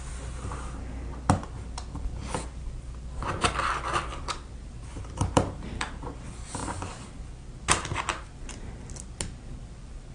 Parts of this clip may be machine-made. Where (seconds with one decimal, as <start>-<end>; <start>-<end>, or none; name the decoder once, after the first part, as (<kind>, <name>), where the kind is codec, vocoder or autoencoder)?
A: 4.1-5.7 (vocoder, BigVGAN v2)